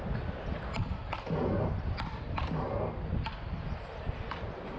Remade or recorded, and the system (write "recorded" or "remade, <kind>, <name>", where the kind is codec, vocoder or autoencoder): recorded